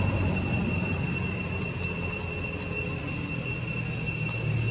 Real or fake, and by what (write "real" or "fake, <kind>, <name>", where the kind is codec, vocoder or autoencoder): real